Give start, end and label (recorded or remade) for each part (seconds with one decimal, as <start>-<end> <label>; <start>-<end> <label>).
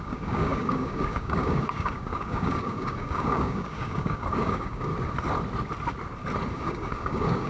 0.0-4.9 remade; 4.9-6.5 recorded; 6.5-7.5 remade